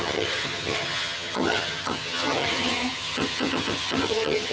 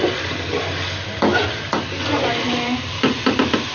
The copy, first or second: first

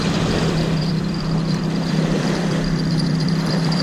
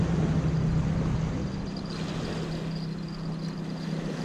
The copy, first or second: first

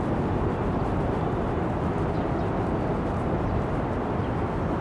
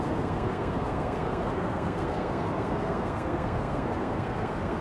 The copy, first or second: second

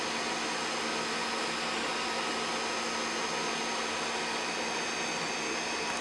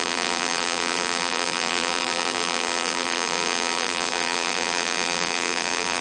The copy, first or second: second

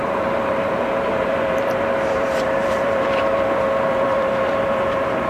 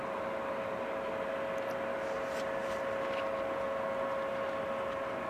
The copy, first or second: first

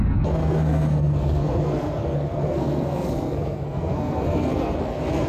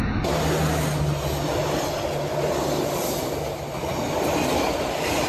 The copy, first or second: first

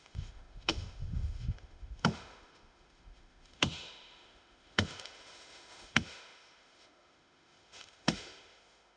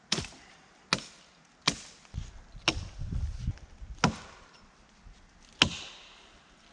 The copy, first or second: first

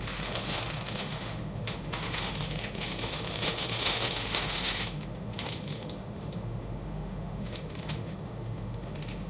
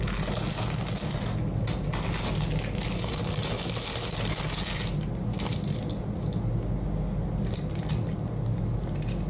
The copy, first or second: first